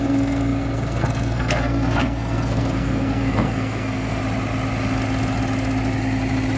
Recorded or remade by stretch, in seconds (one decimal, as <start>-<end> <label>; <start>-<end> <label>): 0.0-4.2 remade; 4.2-6.6 recorded